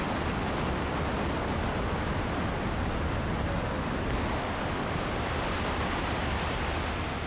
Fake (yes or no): no